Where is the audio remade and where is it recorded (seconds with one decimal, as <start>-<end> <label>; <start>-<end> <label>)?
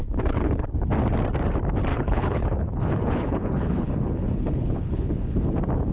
0.0-0.9 remade; 0.9-1.9 recorded; 1.9-5.4 remade; 5.4-5.9 recorded